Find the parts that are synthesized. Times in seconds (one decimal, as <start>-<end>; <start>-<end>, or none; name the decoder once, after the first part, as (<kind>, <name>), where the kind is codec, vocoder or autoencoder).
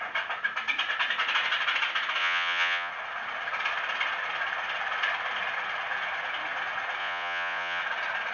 2.2-2.9 (vocoder, Vocos); 7.0-7.8